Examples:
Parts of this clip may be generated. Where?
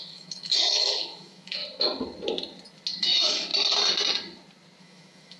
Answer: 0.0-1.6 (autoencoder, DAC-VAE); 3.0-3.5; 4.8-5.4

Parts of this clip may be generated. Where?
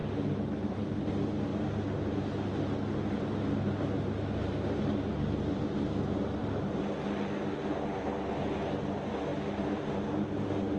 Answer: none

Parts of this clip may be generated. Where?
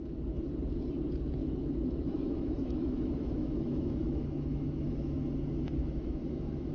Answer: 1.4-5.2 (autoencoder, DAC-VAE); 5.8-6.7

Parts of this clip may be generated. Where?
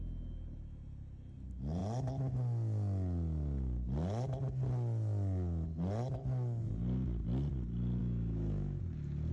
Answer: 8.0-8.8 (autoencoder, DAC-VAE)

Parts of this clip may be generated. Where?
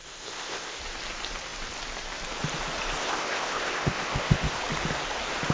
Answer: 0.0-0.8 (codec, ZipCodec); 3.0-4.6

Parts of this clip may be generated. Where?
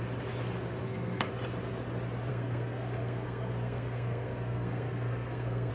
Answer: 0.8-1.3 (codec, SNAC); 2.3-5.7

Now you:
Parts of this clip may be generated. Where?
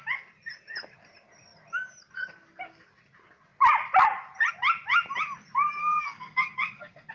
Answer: 5.8-7.1 (codec, SNAC)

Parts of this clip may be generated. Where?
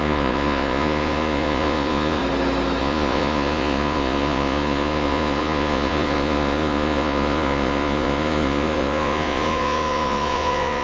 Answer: 0.0-2.2 (vocoder, Vocos); 2.8-10.8